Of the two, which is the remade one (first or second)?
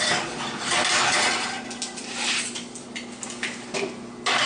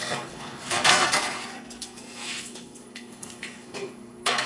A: second